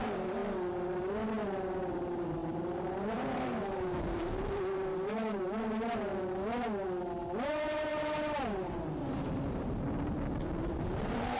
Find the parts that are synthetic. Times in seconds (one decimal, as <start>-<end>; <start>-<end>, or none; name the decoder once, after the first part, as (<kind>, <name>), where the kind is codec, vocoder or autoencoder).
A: 0.0-6.1 (vocoder, BigVGAN v2); 7.5-11.4